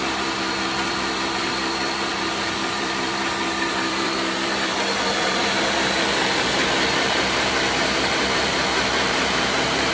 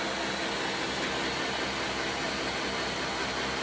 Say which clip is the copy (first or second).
first